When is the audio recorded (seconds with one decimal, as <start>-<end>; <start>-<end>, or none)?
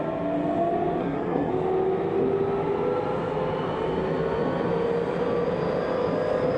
0.0-1.0; 1.5-6.6